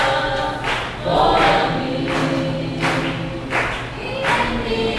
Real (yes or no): yes